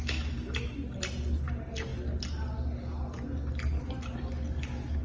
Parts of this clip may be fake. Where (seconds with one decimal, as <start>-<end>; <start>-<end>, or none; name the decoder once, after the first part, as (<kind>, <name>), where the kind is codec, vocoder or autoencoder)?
none